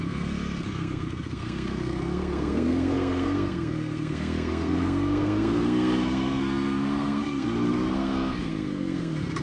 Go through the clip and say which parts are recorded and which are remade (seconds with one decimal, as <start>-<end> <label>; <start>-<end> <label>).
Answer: 0.0-9.4 remade